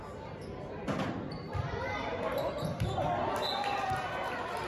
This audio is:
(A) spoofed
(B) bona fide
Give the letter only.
B